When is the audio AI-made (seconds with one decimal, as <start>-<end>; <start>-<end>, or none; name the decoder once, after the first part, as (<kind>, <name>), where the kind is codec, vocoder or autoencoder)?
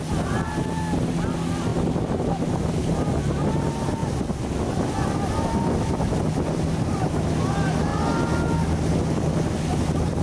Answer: none